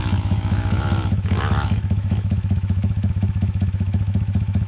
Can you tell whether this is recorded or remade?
remade